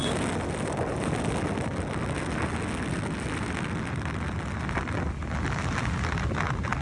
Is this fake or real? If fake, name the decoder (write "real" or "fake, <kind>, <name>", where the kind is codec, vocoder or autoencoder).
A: real